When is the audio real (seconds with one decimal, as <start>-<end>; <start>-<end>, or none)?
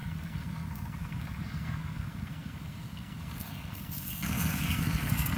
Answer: none